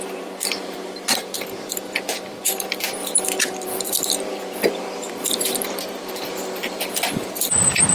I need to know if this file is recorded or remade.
remade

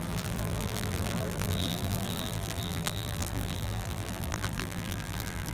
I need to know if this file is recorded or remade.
remade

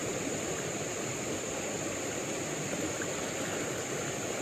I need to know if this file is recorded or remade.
recorded